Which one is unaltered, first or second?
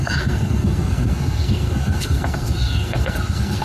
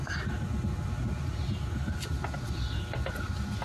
second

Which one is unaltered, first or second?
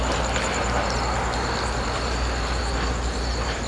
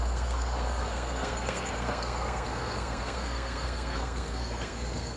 first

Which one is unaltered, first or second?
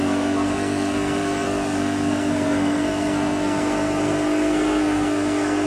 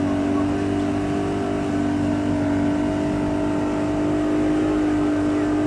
second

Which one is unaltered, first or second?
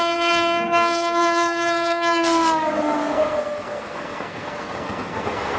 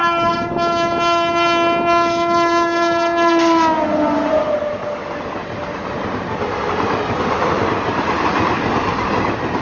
second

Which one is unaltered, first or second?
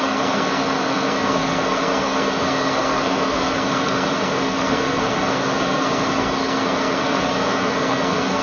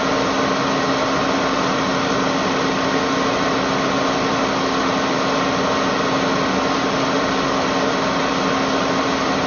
second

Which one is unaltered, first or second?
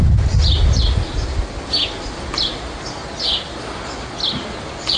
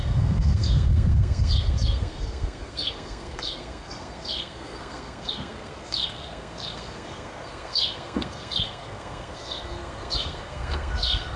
first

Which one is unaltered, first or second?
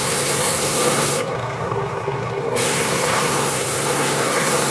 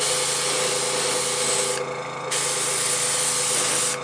second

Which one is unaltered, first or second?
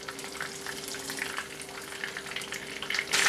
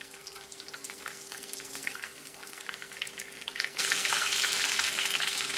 first